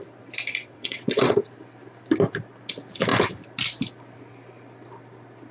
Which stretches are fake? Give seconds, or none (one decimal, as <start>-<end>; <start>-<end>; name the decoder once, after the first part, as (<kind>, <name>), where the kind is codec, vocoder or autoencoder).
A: 0.6-1.4 (vocoder, WaveNeXt)